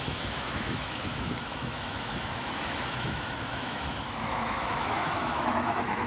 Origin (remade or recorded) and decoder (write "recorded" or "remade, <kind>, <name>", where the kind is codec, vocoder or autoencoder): remade, autoencoder, DAC-VAE